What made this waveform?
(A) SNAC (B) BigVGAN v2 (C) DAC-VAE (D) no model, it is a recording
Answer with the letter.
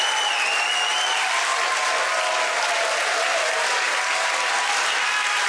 D